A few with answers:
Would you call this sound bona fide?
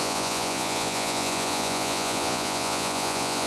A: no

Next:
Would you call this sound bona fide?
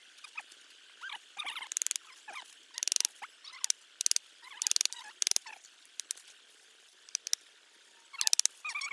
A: yes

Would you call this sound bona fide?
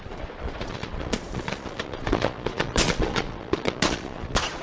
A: no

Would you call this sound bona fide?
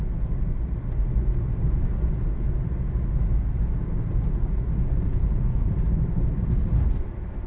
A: yes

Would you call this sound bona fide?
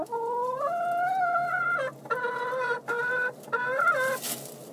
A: yes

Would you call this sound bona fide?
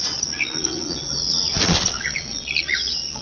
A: no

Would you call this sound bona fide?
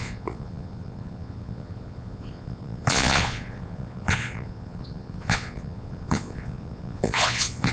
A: no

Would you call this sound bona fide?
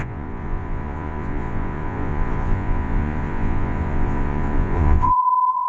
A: no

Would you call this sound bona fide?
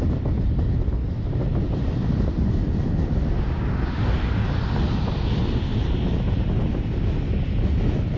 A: yes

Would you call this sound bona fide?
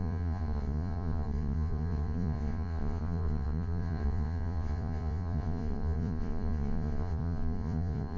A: no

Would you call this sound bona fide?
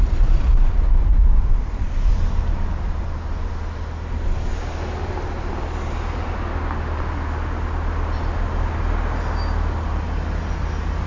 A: yes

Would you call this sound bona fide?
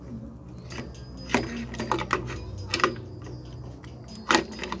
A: yes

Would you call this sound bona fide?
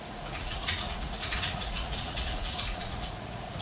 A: no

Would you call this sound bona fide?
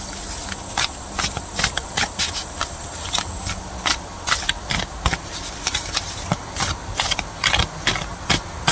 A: yes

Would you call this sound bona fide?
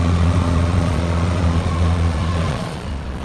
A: no